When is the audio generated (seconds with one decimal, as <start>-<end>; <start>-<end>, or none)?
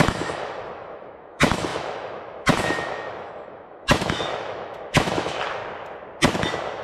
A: 0.0-5.6